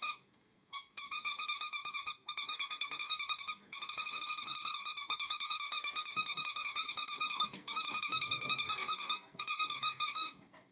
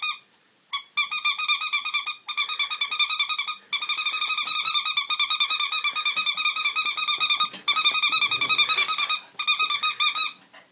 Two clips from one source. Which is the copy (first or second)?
first